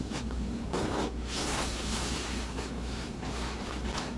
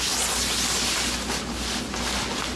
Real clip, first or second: second